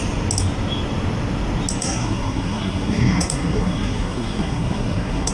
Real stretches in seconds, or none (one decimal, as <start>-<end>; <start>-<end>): 0.0-1.8